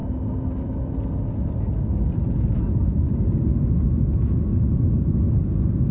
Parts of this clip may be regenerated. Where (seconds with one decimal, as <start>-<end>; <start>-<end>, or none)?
none